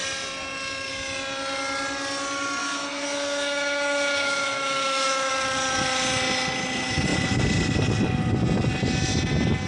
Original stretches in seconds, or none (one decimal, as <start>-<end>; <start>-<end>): 0.0-2.6; 5.3-9.7